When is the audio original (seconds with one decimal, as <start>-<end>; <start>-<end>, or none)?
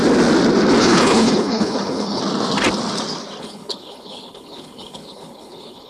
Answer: 0.0-0.8; 2.2-3.4